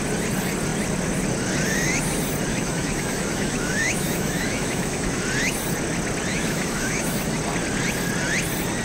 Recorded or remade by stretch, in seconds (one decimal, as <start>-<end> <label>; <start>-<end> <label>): 0.0-2.5 recorded; 2.5-5.2 remade; 5.2-6.3 recorded; 6.3-7.4 remade; 7.4-8.8 recorded